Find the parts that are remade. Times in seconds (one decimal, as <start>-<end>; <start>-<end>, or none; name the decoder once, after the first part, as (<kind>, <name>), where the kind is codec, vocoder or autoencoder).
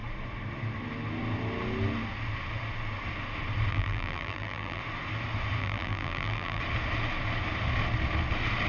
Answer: 3.7-4.8 (vocoder, BigVGAN v2); 5.6-6.6